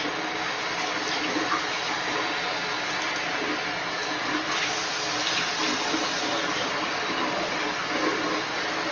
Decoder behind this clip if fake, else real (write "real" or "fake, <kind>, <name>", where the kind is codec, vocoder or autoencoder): real